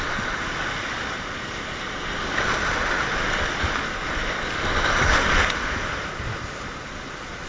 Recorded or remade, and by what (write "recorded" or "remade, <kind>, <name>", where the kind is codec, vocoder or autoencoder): recorded